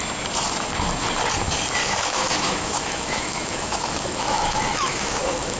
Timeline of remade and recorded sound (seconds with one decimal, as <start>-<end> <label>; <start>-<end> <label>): 0.0-1.8 recorded; 1.8-5.6 remade